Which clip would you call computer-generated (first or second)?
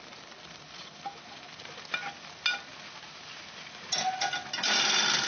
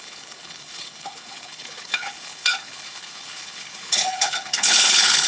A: second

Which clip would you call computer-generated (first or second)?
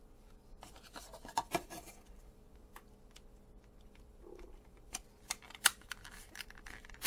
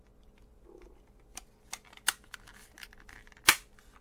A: first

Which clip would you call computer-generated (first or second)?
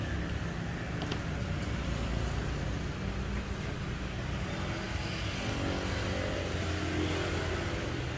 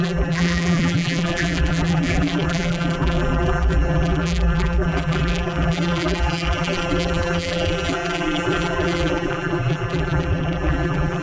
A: second